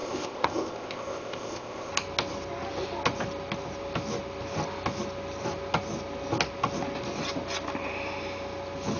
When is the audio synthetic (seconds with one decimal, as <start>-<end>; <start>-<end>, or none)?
0.0-1.9